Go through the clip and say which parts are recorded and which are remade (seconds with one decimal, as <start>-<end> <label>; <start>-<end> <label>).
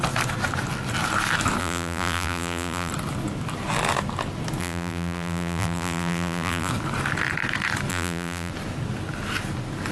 0.0-1.6 recorded; 1.6-2.9 remade; 2.9-4.6 recorded; 4.6-6.7 remade; 6.7-7.9 recorded; 7.9-8.5 remade; 8.5-9.9 recorded